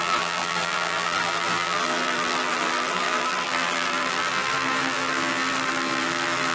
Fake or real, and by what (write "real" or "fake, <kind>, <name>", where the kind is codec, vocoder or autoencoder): fake, vocoder, BigVGAN v2